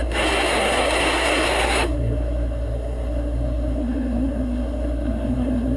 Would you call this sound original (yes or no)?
no